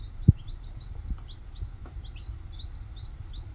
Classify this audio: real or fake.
real